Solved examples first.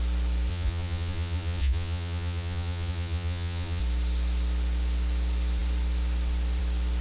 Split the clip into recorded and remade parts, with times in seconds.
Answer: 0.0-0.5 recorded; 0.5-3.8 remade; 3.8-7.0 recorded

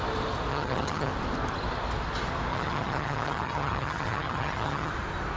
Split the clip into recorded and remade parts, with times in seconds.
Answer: 0.0-0.5 recorded; 0.5-1.1 remade; 1.1-2.5 recorded; 2.5-4.9 remade; 4.9-5.4 recorded

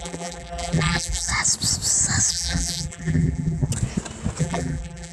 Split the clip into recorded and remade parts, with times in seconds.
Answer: 0.0-1.3 remade; 1.3-2.3 recorded; 2.3-3.7 remade; 3.7-4.4 recorded; 4.4-5.1 remade

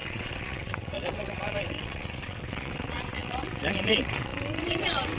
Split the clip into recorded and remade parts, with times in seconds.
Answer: 0.0-5.2 remade

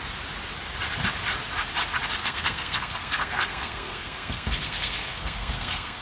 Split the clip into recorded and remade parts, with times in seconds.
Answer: 0.0-2.2 recorded; 2.2-6.0 remade